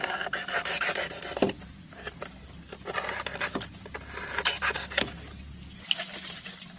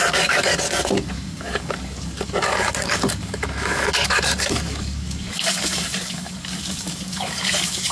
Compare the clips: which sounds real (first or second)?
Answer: first